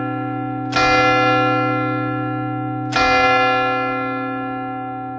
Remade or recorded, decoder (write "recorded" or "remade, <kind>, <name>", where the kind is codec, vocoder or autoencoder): recorded